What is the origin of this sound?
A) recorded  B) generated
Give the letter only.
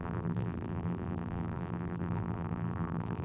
B